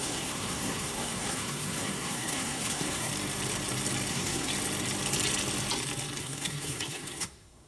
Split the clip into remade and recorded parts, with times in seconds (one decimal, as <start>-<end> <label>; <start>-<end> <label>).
0.0-3.1 remade; 3.1-4.1 recorded; 4.1-4.5 remade; 4.5-6.2 recorded; 6.2-7.7 remade